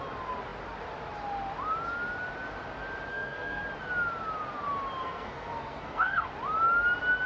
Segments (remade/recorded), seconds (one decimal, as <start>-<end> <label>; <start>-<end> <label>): 0.0-3.1 recorded; 3.1-3.6 remade; 3.6-5.0 recorded; 5.0-6.3 remade; 6.3-7.3 recorded